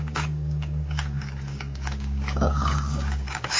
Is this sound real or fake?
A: fake